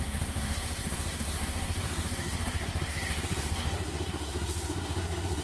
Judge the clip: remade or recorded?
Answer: remade